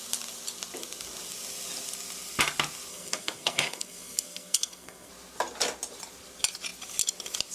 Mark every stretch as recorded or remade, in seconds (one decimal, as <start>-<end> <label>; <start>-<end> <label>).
0.0-2.9 recorded; 2.9-5.1 remade; 5.1-7.5 recorded